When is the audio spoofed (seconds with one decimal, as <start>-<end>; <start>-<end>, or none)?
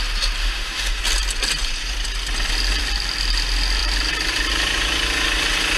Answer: 0.4-1.0